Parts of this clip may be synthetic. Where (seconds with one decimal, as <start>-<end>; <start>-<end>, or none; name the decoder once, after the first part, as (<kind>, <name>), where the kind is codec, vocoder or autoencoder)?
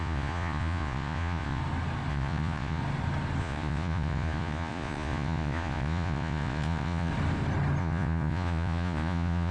0.0-1.6 (vocoder, Vocos); 2.1-2.8; 3.4-7.1; 7.8-9.5